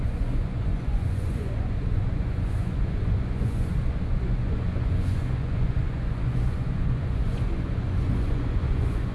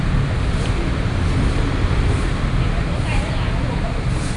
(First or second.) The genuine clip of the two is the second